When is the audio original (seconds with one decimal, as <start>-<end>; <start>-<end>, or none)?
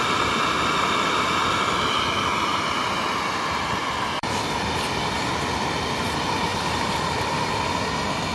0.0-2.5; 3.1-3.8; 5.3-6.5; 7.5-8.3